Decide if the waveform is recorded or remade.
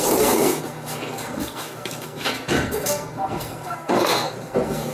remade